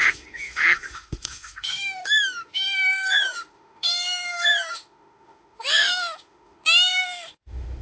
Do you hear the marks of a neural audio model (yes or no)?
yes